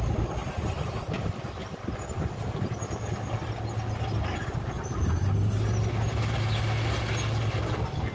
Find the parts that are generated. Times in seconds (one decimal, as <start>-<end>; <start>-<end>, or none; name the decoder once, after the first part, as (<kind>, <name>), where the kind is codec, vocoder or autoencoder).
none